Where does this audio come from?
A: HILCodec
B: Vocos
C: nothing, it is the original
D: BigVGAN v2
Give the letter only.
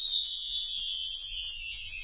B